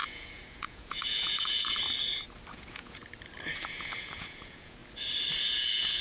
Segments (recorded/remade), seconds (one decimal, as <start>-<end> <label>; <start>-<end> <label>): 0.0-1.8 remade; 1.8-2.5 recorded; 2.5-3.0 remade; 3.0-3.6 recorded; 3.6-4.8 remade; 4.8-5.4 recorded; 5.4-6.0 remade